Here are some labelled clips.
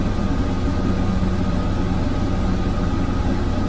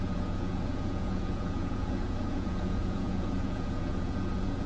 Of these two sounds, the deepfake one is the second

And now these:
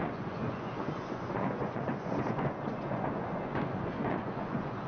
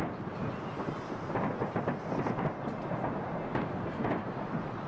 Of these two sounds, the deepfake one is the first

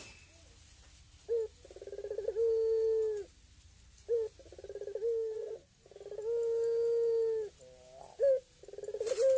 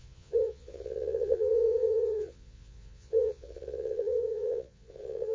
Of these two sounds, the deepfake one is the second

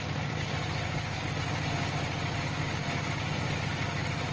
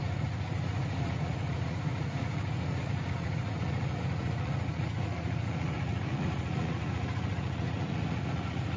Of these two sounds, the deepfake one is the second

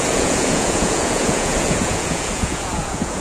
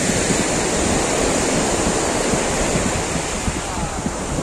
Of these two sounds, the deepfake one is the first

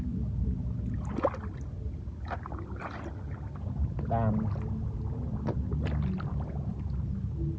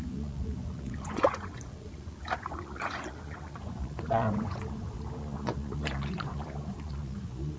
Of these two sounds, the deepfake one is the second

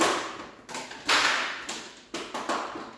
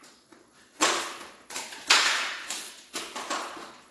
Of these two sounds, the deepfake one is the second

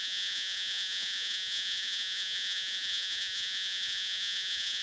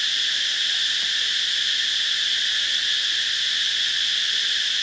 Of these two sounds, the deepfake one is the first